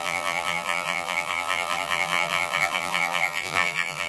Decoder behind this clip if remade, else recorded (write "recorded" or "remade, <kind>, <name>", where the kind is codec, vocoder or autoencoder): remade, vocoder, BigVGAN v2